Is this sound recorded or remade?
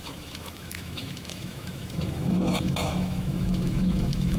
remade